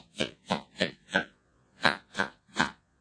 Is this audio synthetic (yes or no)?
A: yes